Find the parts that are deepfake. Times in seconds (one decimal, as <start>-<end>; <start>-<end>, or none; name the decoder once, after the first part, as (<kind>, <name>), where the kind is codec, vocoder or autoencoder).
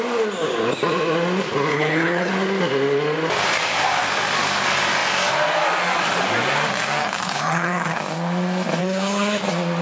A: 1.7-2.3 (codec, HILCodec); 7.0-8.0; 8.8-9.4